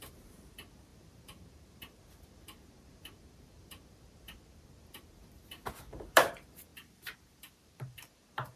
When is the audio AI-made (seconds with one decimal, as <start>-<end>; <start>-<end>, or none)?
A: 0.0-8.6